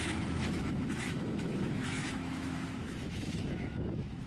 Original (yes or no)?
no